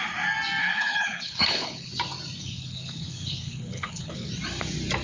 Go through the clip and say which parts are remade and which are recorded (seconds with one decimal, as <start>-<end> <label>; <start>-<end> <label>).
0.0-0.6 recorded; 0.6-1.9 remade; 1.9-2.4 recorded; 2.4-4.3 remade; 4.3-5.0 recorded